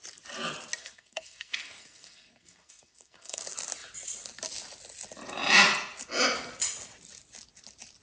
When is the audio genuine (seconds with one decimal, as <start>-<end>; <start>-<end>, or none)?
0.0-0.8; 3.4-8.0